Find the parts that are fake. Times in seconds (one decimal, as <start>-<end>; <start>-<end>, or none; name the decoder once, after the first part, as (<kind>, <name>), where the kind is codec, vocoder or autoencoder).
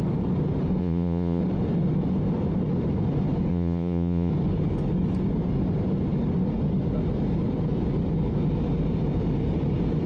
0.8-1.4 (vocoder, Vocos); 3.5-4.3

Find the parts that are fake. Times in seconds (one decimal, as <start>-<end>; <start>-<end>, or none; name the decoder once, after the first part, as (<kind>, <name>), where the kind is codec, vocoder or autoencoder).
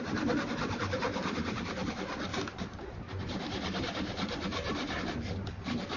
1.1-1.9 (vocoder, BigVGAN v2); 2.3-5.0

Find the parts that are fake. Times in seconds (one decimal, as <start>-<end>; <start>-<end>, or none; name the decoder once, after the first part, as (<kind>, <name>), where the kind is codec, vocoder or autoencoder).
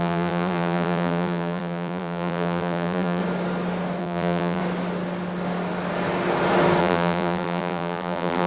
0.0-3.2 (vocoder, BigVGAN v2); 4.0-4.6; 6.8-8.5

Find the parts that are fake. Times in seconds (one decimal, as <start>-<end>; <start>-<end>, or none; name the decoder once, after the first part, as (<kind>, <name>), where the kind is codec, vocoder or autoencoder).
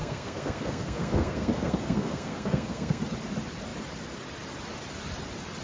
0.0-3.0 (codec, SNAC)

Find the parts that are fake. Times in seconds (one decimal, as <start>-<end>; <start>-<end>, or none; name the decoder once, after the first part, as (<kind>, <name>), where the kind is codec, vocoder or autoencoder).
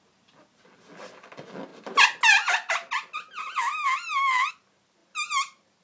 none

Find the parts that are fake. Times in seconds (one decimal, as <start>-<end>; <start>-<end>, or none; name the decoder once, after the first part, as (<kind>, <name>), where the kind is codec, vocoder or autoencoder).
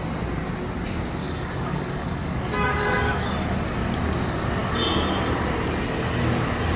1.2-3.3 (codec, DAC)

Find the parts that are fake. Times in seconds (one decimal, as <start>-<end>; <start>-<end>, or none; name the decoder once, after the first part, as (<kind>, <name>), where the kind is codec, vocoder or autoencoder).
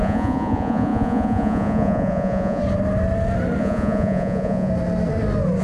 0.0-2.6 (vocoder, Vocos); 3.6-4.7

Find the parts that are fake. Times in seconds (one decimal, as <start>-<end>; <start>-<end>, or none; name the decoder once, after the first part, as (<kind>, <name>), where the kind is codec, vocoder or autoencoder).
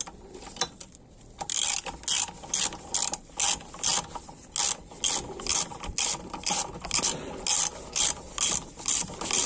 none